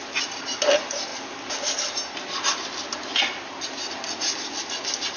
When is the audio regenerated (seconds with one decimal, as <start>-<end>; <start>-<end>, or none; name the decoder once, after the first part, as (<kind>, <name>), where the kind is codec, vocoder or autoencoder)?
none